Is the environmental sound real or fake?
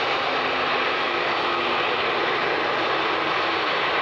real